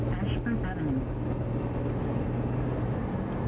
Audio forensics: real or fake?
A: real